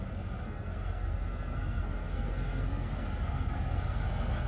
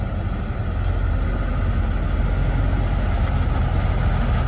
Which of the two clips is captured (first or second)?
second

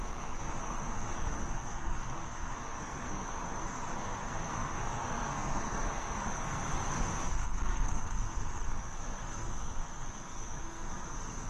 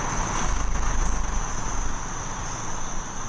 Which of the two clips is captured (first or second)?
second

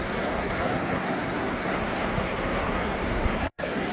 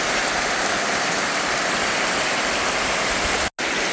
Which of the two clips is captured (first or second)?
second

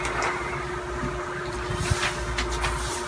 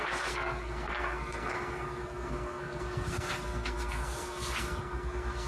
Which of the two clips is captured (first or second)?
first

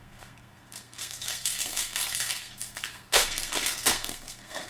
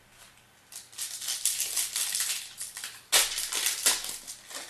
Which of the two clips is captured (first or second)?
second